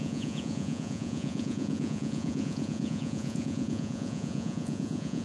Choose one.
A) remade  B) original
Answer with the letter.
A